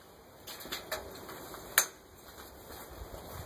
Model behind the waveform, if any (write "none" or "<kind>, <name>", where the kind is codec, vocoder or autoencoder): none